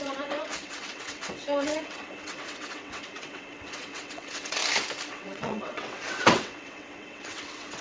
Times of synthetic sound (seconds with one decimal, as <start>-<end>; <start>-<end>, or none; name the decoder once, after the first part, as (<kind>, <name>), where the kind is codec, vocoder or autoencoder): 0.0-4.6 (vocoder, WaveNeXt); 5.1-7.8